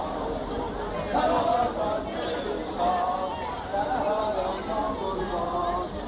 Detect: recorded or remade recorded